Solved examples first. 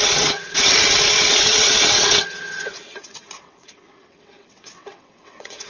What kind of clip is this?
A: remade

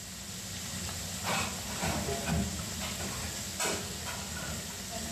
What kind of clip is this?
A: recorded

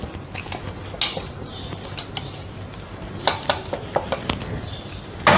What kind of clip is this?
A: recorded